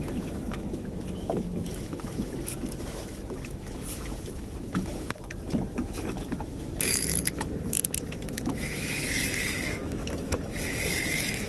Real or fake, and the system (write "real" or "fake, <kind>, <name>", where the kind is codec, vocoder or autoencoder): fake, autoencoder, DAC-VAE